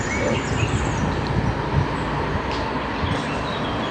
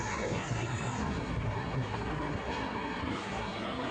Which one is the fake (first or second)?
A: second